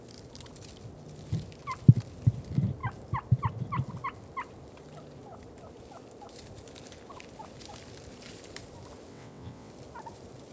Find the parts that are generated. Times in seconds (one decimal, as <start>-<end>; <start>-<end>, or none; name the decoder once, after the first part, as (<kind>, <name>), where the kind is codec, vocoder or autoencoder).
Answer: 9.1-9.7 (vocoder, WaveNeXt)